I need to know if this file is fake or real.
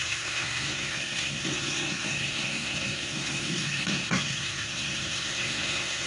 fake